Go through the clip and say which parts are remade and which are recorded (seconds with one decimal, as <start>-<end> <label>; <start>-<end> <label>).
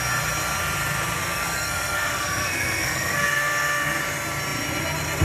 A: 0.0-1.2 recorded; 1.2-4.0 remade; 4.0-5.2 recorded